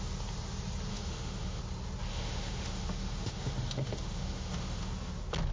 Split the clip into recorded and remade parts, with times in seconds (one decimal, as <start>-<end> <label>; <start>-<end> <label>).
0.0-0.9 recorded; 0.9-1.6 remade; 1.6-2.1 recorded; 2.1-4.9 remade; 4.9-5.5 recorded